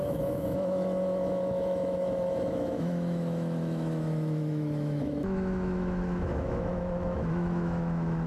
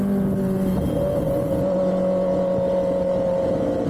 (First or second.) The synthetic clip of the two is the first